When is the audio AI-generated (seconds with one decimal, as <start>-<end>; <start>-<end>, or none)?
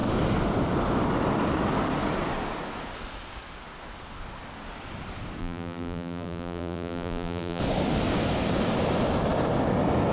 5.4-7.6